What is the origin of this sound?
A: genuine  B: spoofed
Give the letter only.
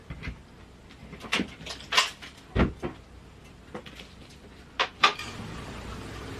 A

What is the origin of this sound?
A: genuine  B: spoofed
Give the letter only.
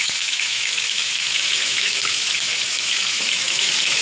B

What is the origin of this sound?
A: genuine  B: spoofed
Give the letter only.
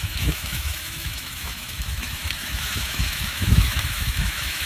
B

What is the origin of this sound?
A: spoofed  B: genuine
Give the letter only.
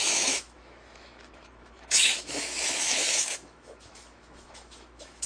A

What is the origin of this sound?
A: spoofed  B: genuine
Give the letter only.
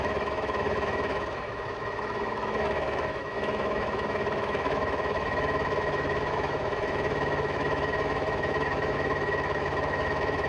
A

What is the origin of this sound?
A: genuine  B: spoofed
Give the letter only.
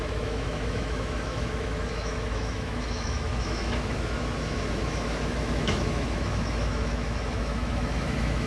B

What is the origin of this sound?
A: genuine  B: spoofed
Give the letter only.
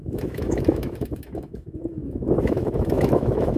B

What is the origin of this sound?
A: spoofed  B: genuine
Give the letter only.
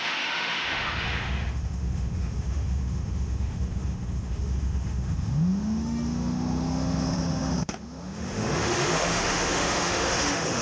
A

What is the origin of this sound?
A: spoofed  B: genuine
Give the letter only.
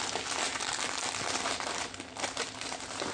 B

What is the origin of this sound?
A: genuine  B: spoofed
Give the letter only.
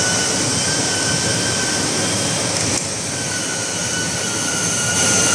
A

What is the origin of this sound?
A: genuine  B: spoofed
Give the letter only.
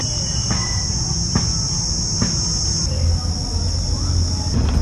A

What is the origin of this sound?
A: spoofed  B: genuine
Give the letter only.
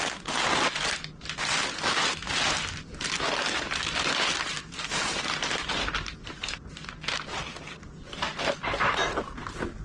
B